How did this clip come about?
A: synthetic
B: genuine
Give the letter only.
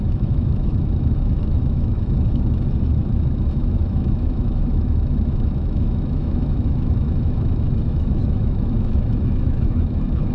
A